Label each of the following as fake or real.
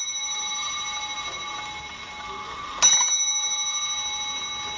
real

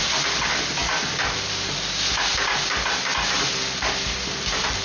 real